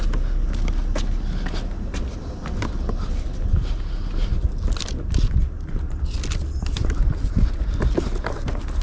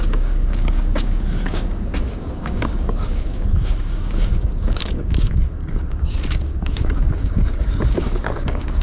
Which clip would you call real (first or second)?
first